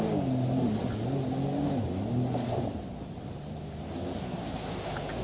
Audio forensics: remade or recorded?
recorded